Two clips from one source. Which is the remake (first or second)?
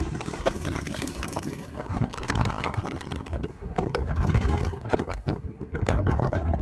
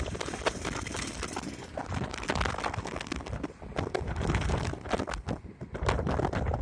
first